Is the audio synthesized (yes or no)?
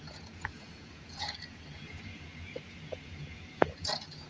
yes